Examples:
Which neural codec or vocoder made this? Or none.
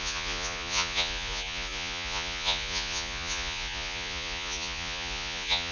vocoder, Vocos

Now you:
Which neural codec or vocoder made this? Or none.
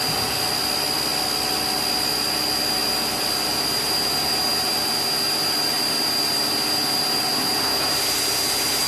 none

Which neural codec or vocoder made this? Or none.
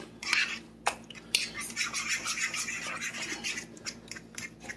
none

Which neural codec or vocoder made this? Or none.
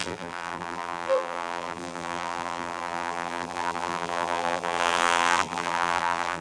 vocoder, BigVGAN v2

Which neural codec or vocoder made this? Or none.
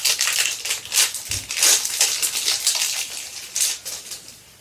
none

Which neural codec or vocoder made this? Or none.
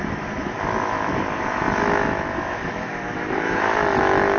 autoencoder, DAC-VAE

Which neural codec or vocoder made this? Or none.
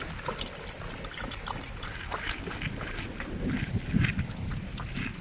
none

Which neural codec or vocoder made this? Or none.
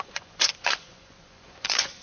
vocoder, Vocos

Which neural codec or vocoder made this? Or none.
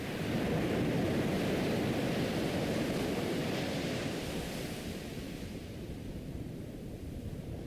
none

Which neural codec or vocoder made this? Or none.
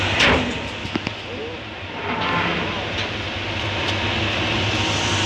none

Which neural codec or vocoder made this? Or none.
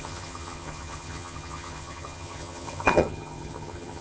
vocoder, HiFi-GAN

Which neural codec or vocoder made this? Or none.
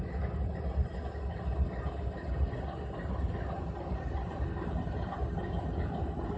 none